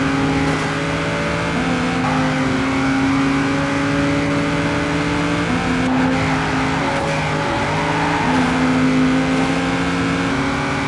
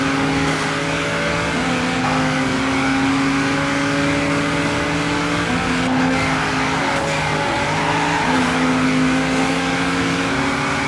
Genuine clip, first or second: first